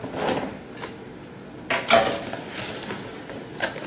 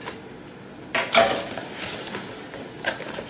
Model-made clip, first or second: second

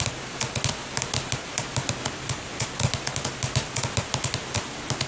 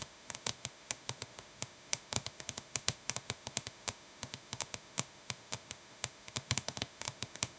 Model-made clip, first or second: second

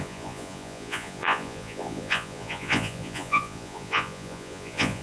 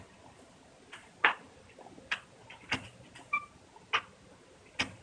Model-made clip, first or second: first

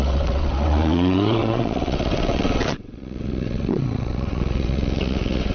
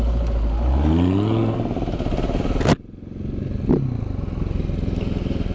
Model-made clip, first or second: first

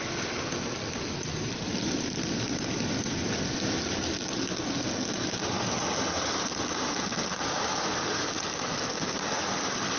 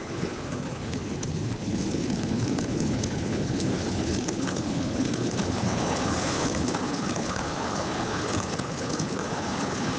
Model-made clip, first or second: second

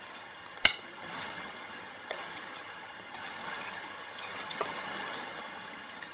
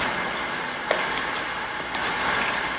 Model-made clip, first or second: first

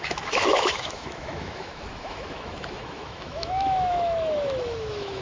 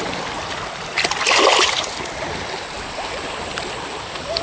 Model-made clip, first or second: first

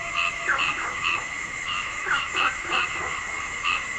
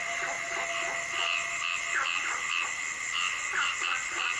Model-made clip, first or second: first